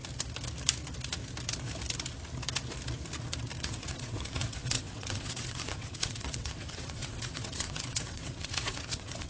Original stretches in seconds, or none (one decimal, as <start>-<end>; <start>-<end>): 0.0-3.6